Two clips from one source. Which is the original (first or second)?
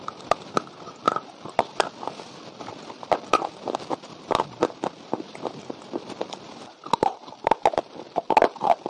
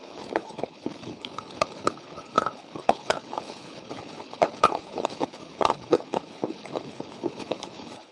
first